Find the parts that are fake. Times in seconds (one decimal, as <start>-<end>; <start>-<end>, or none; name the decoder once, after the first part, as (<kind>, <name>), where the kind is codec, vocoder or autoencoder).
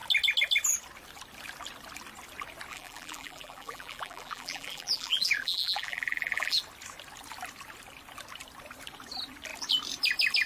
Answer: 2.7-6.6 (vocoder, BigVGAN v2)